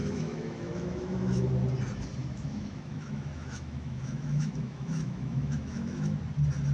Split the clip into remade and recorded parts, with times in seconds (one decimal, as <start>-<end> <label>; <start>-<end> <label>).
0.0-1.5 remade; 1.5-2.2 recorded; 2.2-6.2 remade; 6.2-6.7 recorded